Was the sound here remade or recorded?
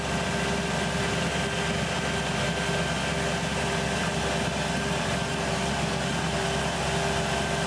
recorded